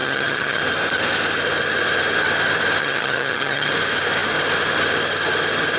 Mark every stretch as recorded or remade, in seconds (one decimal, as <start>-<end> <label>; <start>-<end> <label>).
0.0-0.6 remade; 0.6-2.8 recorded; 2.8-3.7 remade; 3.7-5.8 recorded